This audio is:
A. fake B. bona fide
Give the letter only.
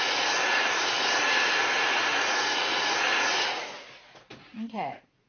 A